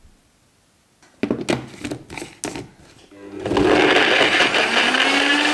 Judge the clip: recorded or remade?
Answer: recorded